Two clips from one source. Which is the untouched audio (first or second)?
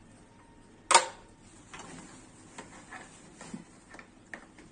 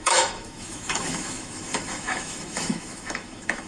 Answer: first